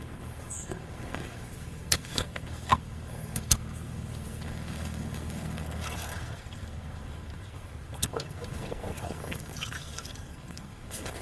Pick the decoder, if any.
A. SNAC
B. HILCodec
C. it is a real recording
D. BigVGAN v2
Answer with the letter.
A